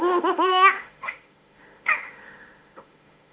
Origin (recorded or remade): remade